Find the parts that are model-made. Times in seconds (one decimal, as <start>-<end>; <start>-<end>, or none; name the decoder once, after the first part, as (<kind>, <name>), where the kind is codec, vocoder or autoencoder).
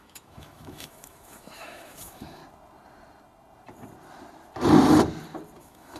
0.0-2.4 (autoencoder, DAC-VAE); 5.6-6.0